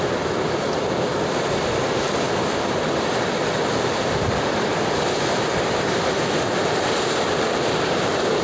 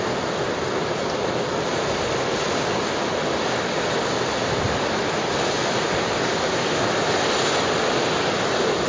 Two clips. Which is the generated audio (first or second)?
first